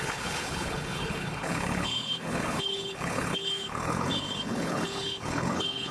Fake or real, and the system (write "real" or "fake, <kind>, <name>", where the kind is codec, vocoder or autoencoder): fake, codec, HILCodec